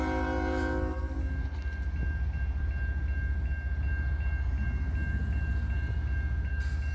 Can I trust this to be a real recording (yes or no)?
yes